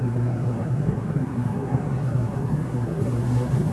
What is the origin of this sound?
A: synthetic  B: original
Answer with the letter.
A